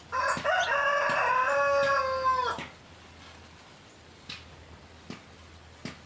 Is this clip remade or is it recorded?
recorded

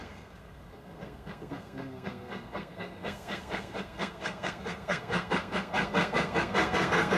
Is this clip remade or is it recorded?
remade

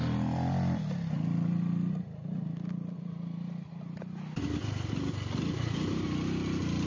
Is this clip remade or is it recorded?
recorded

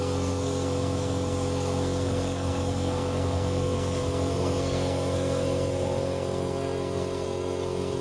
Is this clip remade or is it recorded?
remade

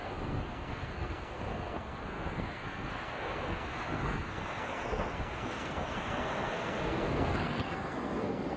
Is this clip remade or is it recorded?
remade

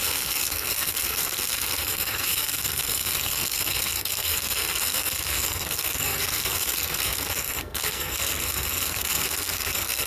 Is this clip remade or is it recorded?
remade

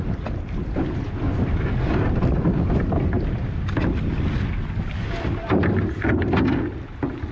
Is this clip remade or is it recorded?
recorded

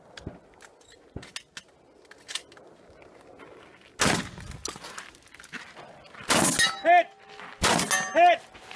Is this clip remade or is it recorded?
recorded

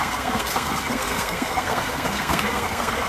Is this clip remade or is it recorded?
remade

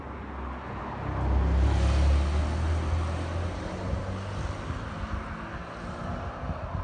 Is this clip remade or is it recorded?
recorded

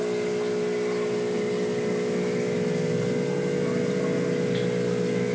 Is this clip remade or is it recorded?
recorded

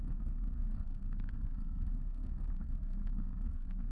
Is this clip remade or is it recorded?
remade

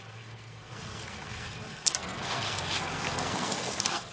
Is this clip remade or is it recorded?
remade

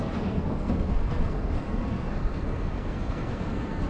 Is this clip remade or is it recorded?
remade